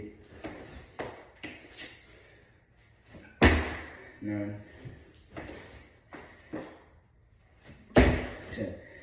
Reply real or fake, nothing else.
real